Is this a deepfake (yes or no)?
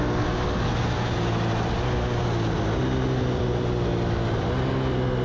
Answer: no